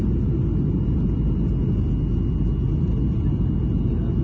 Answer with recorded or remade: recorded